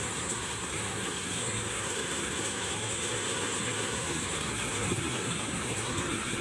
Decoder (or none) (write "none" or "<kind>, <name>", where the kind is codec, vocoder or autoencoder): codec, SNAC